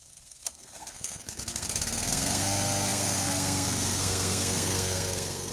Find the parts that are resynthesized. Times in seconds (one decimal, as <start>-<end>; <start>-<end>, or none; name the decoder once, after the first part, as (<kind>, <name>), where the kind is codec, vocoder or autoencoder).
0.0-5.5 (codec, SNAC)